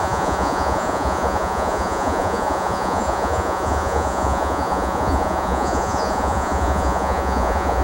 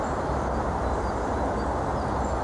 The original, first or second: second